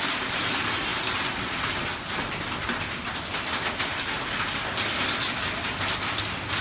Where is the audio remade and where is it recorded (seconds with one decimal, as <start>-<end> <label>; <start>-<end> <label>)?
0.0-6.6 recorded